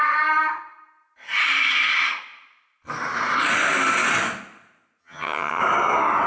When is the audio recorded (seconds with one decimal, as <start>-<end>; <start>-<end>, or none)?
0.0-5.0; 5.6-6.3